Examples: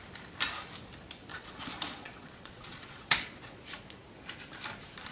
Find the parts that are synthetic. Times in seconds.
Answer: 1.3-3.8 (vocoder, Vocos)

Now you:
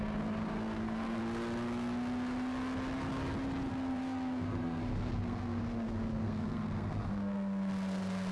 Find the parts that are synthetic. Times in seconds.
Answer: 0.0-1.2 (codec, SNAC); 3.7-8.3

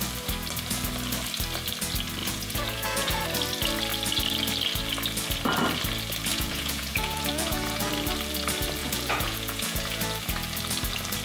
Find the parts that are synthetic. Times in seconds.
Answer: 2.2-3.2 (vocoder, Vocos); 6.3-7.9; 8.8-10.0

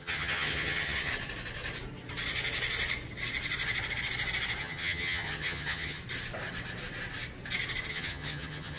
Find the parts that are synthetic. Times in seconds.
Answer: 0.0-1.1 (vocoder, HiFi-GAN); 4.6-6.0; 7.9-8.8

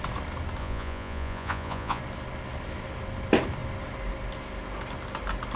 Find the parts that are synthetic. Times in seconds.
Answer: 0.6-2.0 (vocoder, Vocos)